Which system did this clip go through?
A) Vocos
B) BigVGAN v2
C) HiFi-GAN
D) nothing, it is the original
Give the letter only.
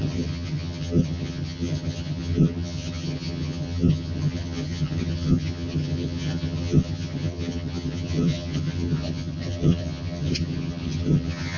C